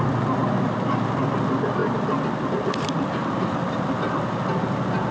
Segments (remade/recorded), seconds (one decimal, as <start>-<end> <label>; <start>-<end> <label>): 0.0-5.1 recorded